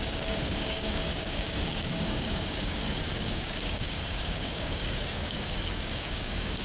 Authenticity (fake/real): fake